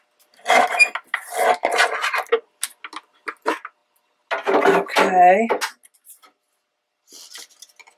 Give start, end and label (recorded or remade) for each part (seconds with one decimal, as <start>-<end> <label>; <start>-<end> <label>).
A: 0.0-8.0 recorded